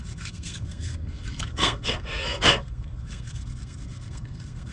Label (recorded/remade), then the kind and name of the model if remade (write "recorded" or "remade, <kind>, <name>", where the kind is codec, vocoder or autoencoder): remade, codec, SNAC